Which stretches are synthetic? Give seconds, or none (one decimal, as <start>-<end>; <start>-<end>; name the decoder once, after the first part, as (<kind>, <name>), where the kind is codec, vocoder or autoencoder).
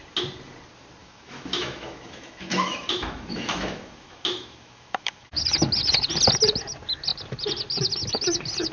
1.0-5.4 (autoencoder, DAC-VAE)